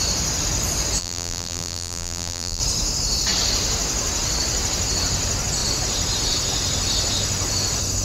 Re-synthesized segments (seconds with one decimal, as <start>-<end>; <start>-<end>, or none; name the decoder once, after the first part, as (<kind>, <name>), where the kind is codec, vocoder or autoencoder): 1.0-2.6 (vocoder, BigVGAN v2)